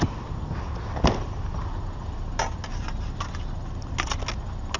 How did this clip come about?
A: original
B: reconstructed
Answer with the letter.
A